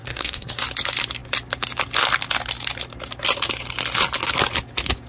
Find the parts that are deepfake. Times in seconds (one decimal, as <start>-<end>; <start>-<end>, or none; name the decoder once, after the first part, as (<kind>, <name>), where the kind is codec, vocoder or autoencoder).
0.0-0.6 (codec, SNAC)

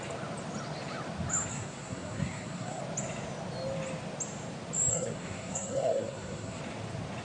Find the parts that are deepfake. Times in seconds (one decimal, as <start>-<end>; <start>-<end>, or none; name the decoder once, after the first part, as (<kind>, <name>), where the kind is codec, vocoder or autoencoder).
1.5-2.8 (codec, SNAC); 4.9-6.6

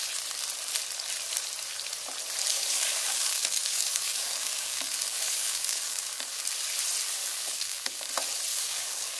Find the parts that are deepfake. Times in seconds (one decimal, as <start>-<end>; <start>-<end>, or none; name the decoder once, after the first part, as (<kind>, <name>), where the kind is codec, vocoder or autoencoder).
2.5-6.4 (codec, DAC); 7.2-8.1; 8.5-9.2